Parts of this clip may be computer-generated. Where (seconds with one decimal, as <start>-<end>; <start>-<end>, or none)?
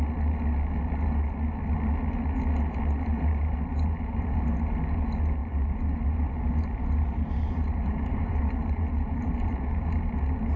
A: 3.1-4.5; 5.4-10.0